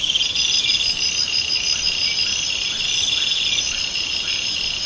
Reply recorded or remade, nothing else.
recorded